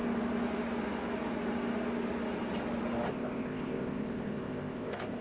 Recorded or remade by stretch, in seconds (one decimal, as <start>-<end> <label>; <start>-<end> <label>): 0.0-3.1 recorded; 3.1-5.2 remade

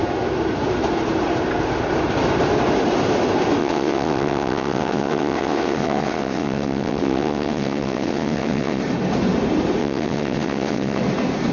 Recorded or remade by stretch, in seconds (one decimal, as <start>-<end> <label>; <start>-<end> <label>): 0.0-3.6 recorded; 3.6-8.8 remade; 8.8-9.8 recorded; 9.8-11.0 remade; 11.0-11.5 recorded